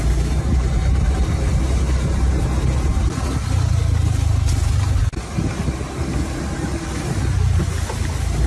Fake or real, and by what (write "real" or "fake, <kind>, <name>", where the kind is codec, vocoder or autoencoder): real